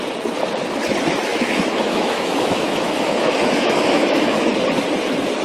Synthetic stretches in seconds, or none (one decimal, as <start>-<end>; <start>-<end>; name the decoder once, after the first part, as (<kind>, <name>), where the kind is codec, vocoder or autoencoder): 1.3-4.5 (autoencoder, DAC-VAE)